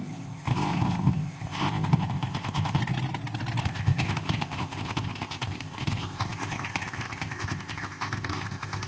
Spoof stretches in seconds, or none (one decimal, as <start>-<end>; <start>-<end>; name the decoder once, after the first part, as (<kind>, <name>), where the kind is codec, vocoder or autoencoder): 0.0-2.8 (codec, ZipCodec); 3.6-8.9